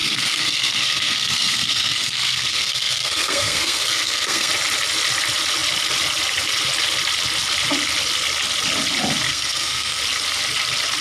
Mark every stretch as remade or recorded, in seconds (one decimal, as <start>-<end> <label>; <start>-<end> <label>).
0.0-4.5 remade; 4.5-9.3 recorded; 9.3-10.0 remade; 10.0-11.0 recorded